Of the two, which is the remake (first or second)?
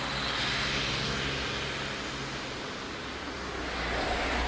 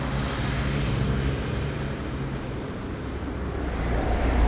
second